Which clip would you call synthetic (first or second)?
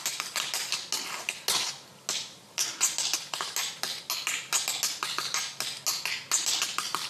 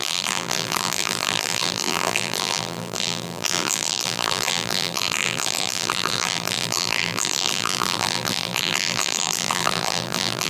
second